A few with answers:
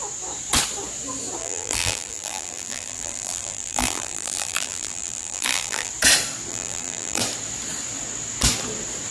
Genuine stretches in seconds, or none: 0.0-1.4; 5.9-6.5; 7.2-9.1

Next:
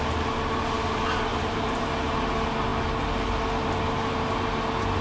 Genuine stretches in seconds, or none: 0.0-1.3; 1.9-5.0

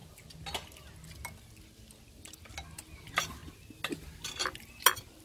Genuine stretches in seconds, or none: 0.0-5.2

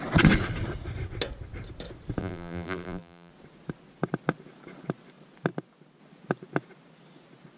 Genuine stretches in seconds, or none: 0.0-2.2; 3.3-7.6

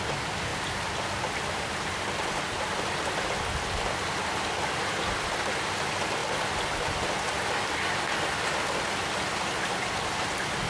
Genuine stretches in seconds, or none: 0.0-0.5; 2.8-6.2; 8.8-10.7

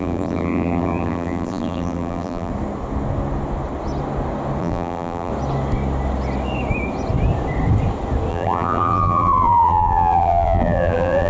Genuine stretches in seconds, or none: 2.5-4.6; 5.3-8.3